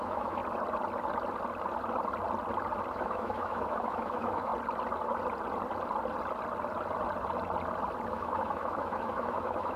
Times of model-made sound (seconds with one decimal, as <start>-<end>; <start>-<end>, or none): 0.0-0.4; 2.9-4.5; 8.1-9.8